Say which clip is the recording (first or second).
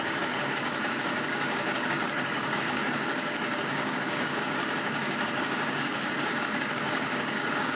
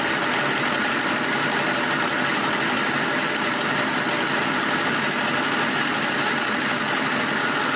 second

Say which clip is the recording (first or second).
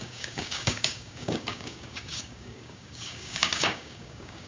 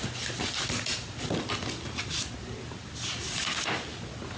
second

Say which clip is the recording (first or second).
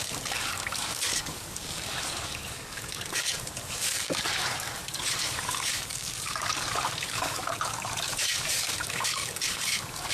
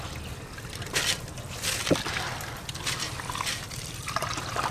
second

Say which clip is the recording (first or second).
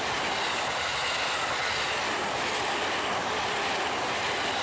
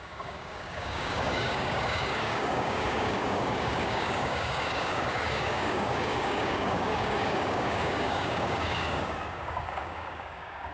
first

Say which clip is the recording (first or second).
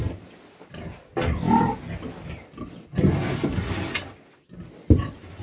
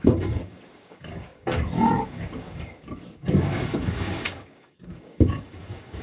first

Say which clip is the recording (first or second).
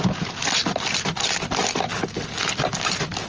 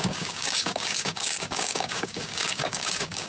first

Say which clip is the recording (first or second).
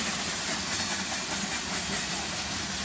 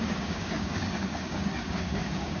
first